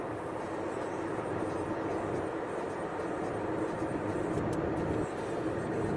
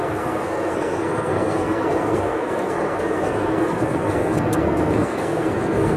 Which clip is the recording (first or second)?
first